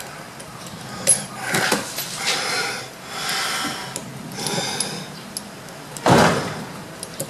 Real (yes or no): yes